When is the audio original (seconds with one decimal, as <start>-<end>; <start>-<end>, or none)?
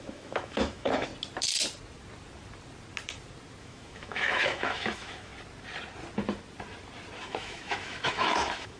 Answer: 1.1-3.6; 5.3-7.2